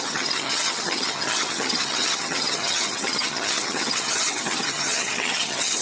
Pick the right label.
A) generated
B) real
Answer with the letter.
A